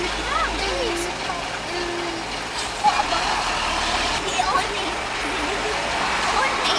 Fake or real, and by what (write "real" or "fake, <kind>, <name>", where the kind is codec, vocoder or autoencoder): real